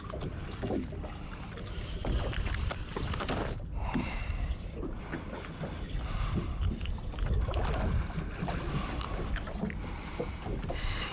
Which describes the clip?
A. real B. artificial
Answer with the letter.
A